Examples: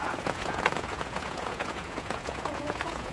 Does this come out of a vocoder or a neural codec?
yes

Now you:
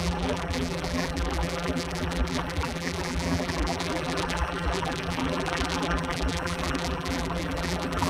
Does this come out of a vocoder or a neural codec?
yes